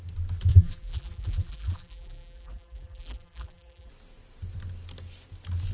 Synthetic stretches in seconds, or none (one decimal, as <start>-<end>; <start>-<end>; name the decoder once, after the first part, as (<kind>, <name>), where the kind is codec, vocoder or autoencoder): 0.5-3.9 (vocoder, BigVGAN v2)